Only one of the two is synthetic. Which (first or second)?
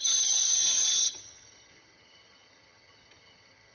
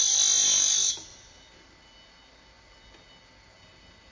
first